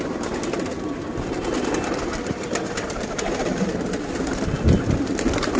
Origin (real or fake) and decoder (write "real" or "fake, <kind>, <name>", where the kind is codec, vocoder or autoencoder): real